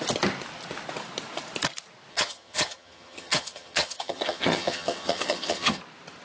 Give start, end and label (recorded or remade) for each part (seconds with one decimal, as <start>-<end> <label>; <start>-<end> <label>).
0.0-2.1 recorded; 2.1-5.8 remade; 5.8-6.2 recorded